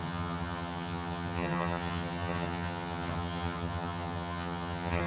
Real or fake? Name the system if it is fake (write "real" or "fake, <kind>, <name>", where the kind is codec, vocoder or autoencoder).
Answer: fake, vocoder, HiFi-GAN